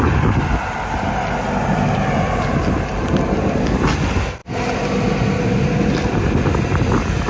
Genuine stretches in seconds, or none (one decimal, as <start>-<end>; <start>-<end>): 0.0-7.3